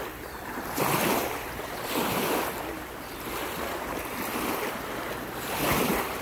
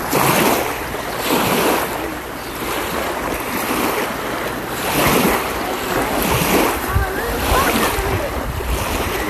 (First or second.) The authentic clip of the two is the second